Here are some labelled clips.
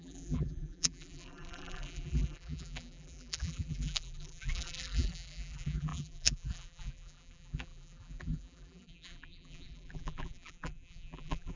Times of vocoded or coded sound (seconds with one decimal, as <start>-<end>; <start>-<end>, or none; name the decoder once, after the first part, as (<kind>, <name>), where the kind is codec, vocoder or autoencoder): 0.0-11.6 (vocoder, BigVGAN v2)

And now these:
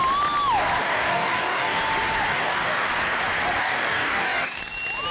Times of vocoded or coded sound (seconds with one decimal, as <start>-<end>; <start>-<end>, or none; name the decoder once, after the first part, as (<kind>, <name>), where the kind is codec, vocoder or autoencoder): 0.8-1.8 (codec, DAC); 2.3-2.9; 3.6-4.6

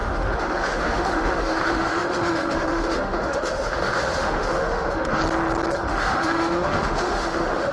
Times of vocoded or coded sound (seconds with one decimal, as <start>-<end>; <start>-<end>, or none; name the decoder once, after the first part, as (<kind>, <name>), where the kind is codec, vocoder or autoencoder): 0.0-5.2 (autoencoder, DAC-VAE); 5.9-7.7

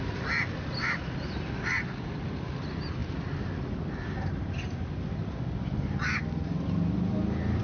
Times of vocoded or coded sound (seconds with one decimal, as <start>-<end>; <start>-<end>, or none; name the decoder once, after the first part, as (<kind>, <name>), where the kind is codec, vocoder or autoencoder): none

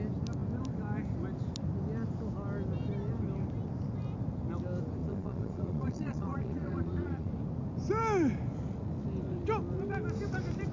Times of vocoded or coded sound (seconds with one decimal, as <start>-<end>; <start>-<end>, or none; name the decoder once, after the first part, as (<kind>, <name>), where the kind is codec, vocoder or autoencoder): 5.0-7.3 (vocoder, Vocos)

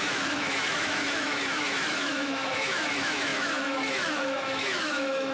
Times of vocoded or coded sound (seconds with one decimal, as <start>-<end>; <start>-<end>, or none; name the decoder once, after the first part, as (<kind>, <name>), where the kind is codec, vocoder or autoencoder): 0.0-5.3 (autoencoder, DAC-VAE)